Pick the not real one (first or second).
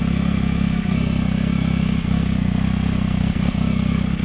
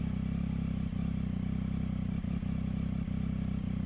first